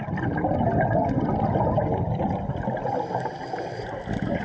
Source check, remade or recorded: recorded